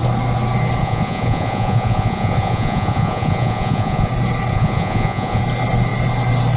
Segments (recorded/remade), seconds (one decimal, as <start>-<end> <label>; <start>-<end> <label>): 0.0-0.8 recorded; 0.8-4.1 remade; 4.1-4.5 recorded; 4.5-5.4 remade; 5.4-6.6 recorded